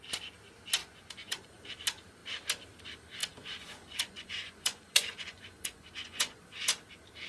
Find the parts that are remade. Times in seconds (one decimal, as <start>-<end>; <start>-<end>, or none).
0.8-1.6; 3.2-6.4